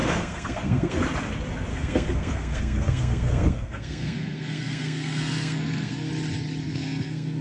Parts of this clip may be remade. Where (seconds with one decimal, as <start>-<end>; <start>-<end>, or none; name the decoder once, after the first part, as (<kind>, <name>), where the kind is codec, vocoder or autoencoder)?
0.0-1.0 (codec, SNAC); 1.7-6.1; 6.6-7.4